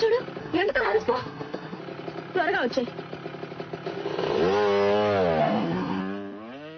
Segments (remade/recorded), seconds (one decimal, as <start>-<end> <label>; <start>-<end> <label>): 0.0-0.4 recorded; 0.4-1.8 remade; 1.8-5.4 recorded; 5.4-6.0 remade; 6.0-6.8 recorded